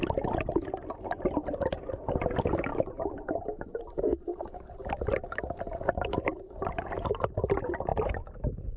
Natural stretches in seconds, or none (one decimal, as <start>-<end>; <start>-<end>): 0.0-2.7; 3.8-8.8